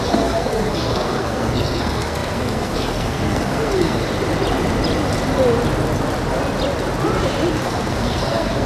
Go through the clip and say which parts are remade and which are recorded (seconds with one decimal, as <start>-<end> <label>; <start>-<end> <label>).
0.0-4.0 remade; 4.0-7.5 recorded; 7.5-8.7 remade